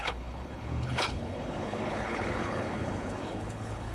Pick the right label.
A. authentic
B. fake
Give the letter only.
B